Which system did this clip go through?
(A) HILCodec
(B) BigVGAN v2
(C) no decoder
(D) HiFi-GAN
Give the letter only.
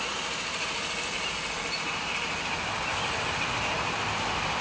C